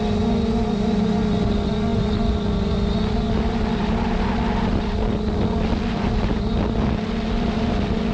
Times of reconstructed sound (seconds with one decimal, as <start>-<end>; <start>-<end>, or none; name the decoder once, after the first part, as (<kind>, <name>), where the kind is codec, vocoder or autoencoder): none